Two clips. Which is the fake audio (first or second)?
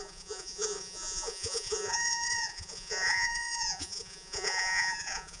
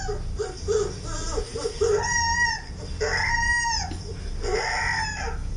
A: first